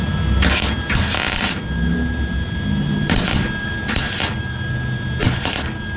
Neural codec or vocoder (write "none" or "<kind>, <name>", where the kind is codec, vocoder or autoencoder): none